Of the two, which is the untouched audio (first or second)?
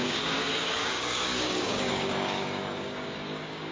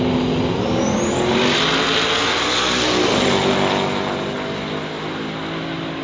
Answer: second